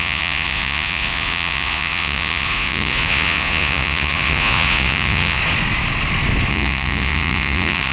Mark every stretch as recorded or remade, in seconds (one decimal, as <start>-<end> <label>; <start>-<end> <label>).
0.0-5.4 remade; 5.4-6.5 recorded; 6.5-7.9 remade